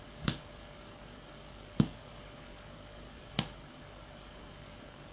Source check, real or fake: fake